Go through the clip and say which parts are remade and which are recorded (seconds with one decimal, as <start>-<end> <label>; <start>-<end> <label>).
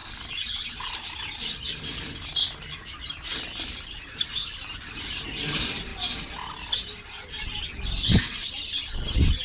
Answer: 0.0-9.4 recorded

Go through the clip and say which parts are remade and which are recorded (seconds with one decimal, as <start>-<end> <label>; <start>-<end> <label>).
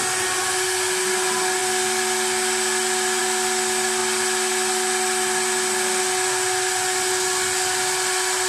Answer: 0.0-8.5 recorded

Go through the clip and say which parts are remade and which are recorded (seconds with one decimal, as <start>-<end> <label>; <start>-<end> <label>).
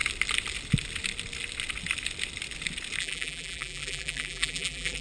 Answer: 0.0-3.0 recorded; 3.0-5.0 remade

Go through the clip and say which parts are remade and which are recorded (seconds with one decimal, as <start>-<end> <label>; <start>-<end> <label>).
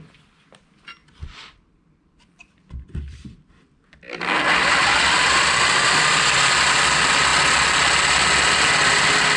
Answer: 0.0-1.0 recorded; 1.0-6.0 remade; 6.0-9.4 recorded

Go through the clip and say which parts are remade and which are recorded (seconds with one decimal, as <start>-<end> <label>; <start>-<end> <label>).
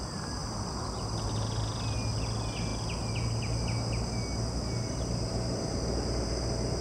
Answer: 0.0-6.8 recorded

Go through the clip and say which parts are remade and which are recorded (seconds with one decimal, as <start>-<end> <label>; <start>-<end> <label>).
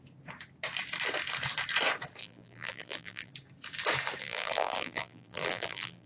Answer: 0.0-2.2 recorded; 2.2-3.3 remade; 3.3-4.2 recorded; 4.2-6.1 remade